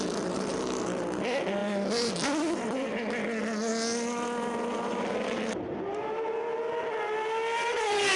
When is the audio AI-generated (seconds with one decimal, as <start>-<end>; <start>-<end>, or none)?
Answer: none